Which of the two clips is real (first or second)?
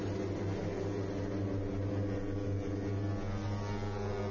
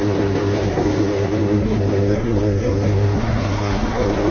first